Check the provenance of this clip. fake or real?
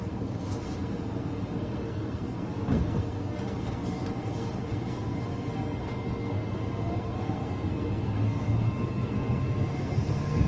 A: fake